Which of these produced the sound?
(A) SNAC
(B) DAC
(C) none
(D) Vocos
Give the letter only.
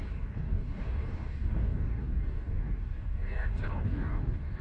B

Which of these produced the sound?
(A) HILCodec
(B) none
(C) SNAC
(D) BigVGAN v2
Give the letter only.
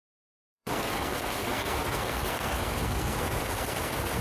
C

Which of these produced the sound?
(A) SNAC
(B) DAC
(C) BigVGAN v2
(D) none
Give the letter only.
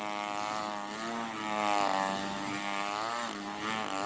D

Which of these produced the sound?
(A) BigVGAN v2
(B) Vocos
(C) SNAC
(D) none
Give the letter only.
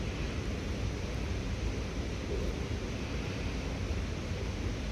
D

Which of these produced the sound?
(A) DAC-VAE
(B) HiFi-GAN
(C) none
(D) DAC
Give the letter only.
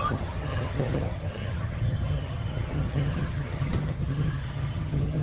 B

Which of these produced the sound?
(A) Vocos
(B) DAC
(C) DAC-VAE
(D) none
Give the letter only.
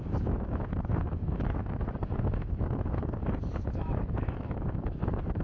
C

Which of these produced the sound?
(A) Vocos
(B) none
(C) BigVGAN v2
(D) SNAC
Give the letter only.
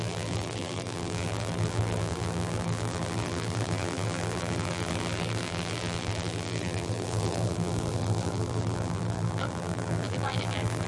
C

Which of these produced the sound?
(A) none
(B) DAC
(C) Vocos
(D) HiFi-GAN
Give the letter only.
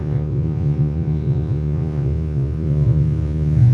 C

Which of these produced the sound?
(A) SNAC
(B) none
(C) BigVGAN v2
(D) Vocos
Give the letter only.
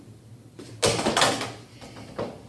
B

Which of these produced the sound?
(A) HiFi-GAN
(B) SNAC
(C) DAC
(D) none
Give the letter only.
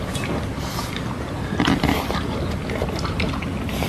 D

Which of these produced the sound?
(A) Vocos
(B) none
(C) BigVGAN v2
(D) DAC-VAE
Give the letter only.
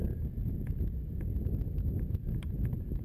B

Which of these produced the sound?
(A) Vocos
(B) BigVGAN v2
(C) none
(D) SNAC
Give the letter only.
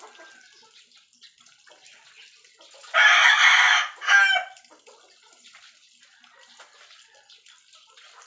C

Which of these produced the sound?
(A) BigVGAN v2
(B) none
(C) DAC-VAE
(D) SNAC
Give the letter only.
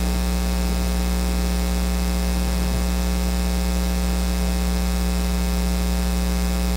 B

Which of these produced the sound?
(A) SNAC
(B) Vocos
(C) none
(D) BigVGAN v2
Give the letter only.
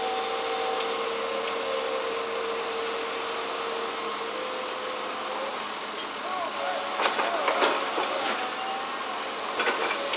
C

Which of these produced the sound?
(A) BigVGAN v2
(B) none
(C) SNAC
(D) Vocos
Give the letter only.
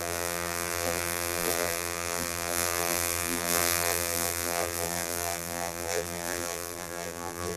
A